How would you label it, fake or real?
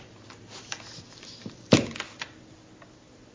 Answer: real